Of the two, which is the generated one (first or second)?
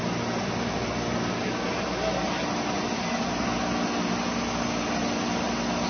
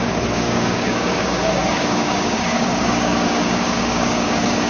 second